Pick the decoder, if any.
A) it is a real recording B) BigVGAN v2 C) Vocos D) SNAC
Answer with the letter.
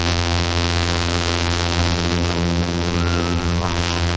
B